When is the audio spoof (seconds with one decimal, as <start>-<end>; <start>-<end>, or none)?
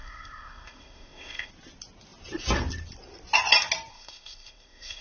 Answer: 0.0-1.5; 3.9-5.0